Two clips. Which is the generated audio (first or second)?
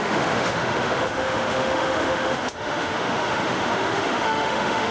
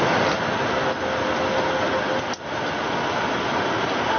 first